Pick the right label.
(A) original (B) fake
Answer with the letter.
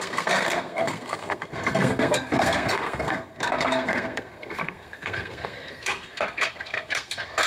B